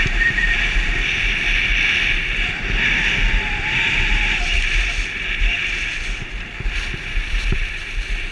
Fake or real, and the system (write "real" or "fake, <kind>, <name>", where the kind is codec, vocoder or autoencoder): real